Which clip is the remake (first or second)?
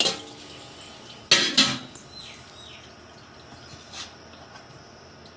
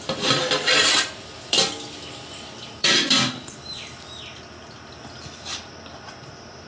second